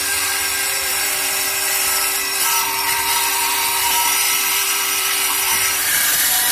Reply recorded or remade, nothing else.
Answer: remade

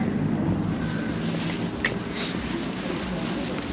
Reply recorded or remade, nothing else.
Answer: recorded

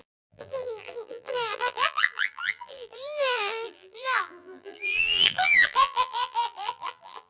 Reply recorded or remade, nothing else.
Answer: remade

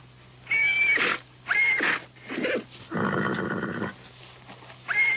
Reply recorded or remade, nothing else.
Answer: recorded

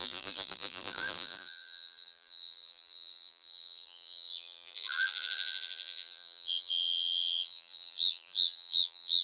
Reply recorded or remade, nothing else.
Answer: remade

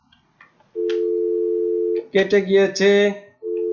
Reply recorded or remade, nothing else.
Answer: recorded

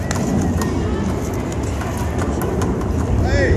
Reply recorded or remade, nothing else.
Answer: recorded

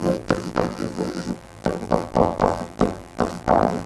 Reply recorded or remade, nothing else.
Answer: remade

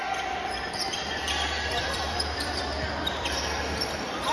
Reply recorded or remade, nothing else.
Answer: remade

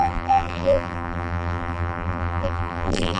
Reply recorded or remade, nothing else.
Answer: remade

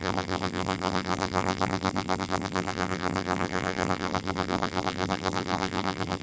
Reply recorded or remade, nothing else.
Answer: remade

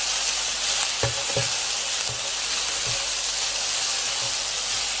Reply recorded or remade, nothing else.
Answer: recorded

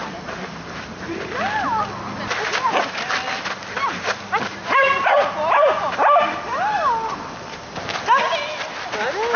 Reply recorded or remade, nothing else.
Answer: recorded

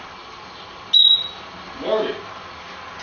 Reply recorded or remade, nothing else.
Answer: recorded